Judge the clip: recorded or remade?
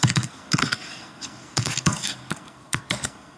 remade